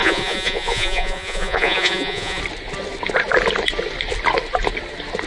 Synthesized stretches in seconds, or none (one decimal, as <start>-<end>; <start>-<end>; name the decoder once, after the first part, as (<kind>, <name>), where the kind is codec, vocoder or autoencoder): 0.0-2.4 (vocoder, Vocos)